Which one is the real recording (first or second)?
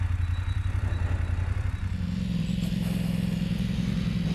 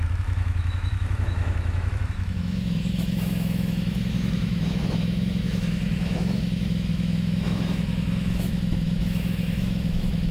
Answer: first